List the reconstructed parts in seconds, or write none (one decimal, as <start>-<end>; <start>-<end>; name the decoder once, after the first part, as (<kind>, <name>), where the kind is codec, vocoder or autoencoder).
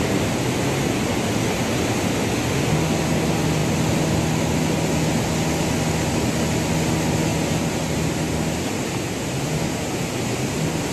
none